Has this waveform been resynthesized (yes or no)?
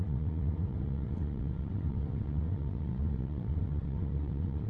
yes